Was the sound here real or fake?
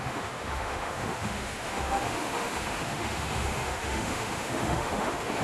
fake